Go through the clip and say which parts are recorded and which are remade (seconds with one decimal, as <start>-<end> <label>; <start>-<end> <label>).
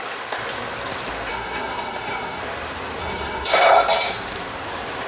0.0-1.3 recorded; 1.3-2.4 remade; 2.4-3.0 recorded; 3.0-3.7 remade; 3.7-5.1 recorded